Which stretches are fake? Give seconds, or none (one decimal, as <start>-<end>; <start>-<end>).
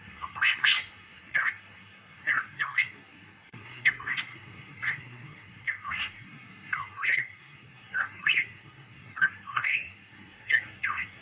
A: 0.0-11.2